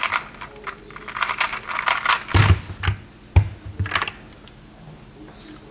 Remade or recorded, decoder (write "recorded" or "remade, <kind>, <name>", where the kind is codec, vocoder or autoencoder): recorded